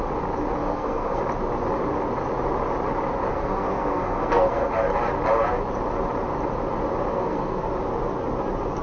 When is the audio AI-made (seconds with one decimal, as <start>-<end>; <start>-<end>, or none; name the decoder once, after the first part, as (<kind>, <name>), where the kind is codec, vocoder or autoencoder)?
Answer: 0.6-1.2 (codec, SNAC); 3.3-4.7; 7.1-7.7